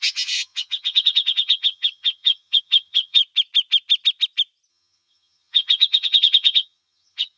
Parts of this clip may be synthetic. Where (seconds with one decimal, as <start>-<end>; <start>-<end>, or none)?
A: 0.0-3.2; 4.7-7.4